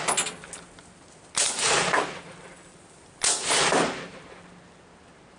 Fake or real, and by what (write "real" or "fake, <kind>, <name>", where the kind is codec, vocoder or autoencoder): real